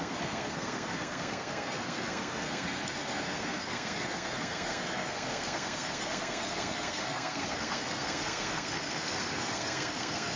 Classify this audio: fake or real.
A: fake